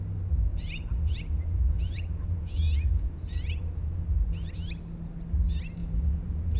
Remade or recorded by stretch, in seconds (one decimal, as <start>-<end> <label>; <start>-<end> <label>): 0.0-0.5 recorded; 0.5-4.5 remade; 4.5-5.8 recorded; 5.8-6.6 remade